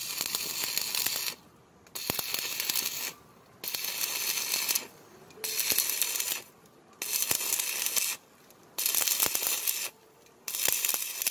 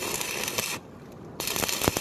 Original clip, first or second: first